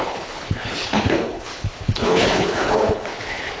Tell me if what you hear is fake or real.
fake